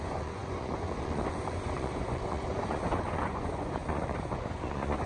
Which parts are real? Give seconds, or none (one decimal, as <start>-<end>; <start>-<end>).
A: none